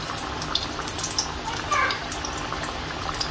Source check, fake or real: real